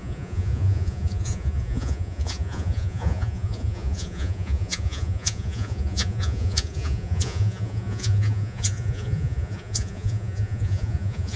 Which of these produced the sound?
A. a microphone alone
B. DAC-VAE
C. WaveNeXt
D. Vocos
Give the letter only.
D